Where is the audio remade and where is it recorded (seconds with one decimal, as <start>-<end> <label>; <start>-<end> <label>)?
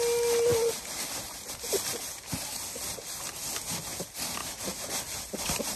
0.0-4.4 recorded; 4.4-4.9 remade; 4.9-5.8 recorded